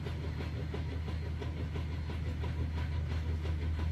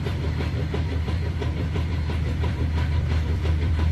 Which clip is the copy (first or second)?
second